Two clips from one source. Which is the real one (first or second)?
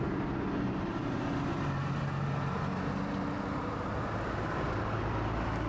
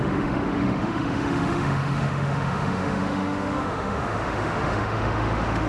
first